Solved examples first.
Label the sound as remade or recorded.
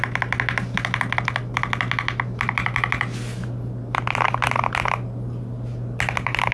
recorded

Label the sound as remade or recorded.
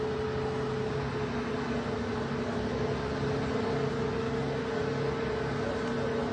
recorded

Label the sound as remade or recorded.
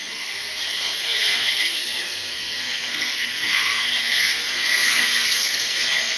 remade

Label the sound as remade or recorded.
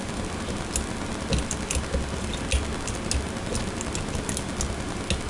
recorded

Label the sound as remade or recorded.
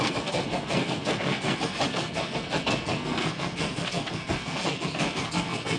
remade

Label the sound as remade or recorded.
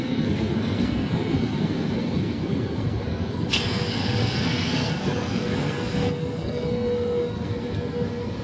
remade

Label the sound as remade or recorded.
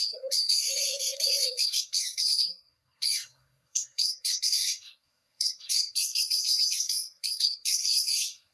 remade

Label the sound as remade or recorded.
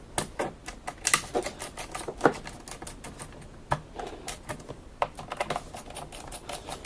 recorded